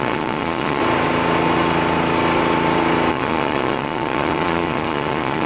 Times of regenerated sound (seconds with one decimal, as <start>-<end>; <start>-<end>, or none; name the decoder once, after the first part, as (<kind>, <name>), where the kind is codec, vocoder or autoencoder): 0.0-0.8 (vocoder, Vocos); 3.1-5.5